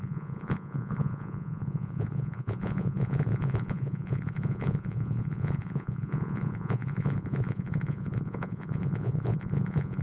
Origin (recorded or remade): remade